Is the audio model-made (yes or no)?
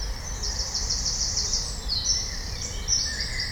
yes